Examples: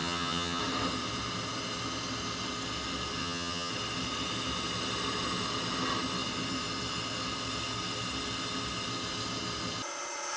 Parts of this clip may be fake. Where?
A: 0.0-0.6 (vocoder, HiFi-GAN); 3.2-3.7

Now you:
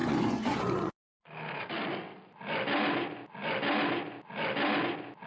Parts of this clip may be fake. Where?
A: 0.0-1.1 (vocoder, Vocos)